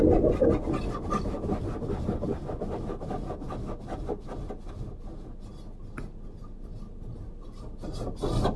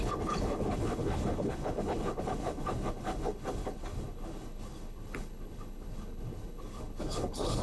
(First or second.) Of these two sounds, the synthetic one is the second